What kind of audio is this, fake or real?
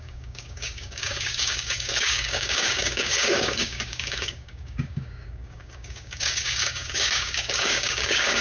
fake